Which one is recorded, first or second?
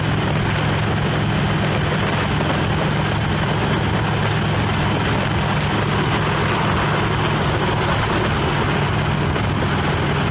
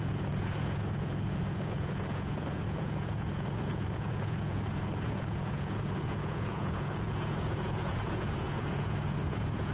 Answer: first